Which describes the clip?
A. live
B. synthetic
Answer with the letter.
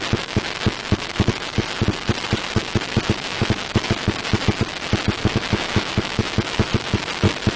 B